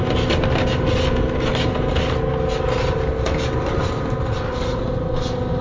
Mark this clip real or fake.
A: real